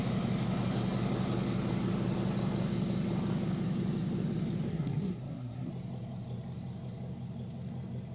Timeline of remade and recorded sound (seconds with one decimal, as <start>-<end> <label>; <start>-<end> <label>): 0.0-4.7 recorded; 4.7-5.7 remade; 5.7-8.1 recorded